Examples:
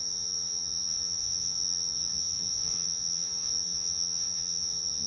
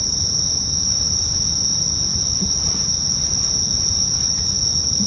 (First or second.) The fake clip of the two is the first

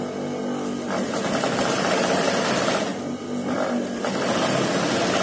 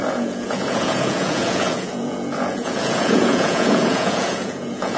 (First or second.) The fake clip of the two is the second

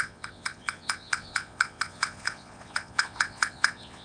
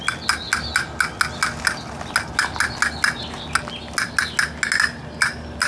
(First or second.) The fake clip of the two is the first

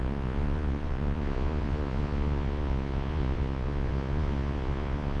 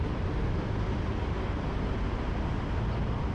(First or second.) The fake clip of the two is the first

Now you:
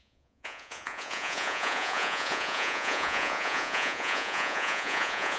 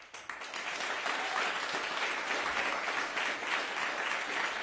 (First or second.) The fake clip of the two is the first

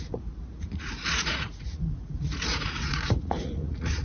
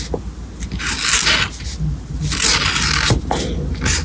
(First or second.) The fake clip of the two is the first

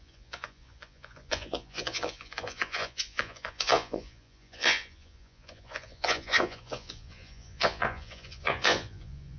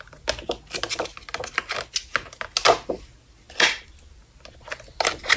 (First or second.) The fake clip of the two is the first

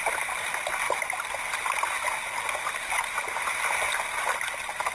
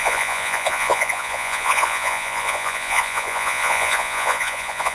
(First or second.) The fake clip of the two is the second